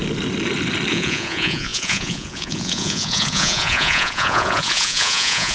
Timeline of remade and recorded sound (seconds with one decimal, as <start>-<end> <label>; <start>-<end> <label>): 0.0-0.9 recorded; 0.9-5.5 remade